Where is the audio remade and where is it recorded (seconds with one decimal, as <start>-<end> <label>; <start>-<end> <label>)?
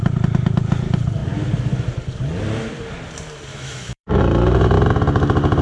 0.0-3.5 recorded; 3.5-4.2 remade; 4.2-5.6 recorded